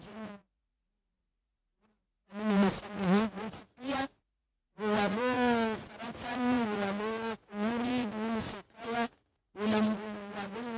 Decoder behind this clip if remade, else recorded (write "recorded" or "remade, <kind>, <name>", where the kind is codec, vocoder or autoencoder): remade, vocoder, Vocos